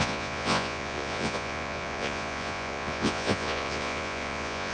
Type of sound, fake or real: fake